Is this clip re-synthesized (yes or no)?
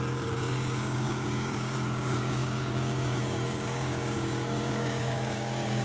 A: yes